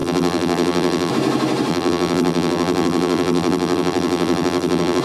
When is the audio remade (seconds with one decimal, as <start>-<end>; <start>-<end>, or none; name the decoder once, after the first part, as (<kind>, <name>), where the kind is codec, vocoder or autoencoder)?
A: 0.0-1.1 (vocoder, BigVGAN v2); 1.7-5.0